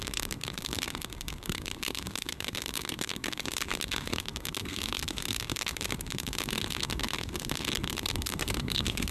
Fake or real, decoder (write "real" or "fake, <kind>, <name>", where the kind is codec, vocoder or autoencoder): fake, codec, SNAC